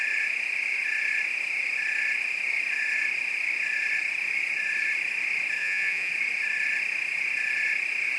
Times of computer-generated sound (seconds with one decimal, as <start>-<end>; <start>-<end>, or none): 5.6-6.1